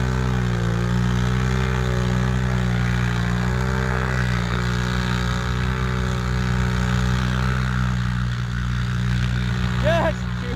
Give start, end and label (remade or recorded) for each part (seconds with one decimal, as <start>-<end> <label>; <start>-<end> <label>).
0.0-3.9 recorded; 3.9-4.6 remade; 4.6-7.2 recorded; 7.2-9.5 remade; 9.5-10.6 recorded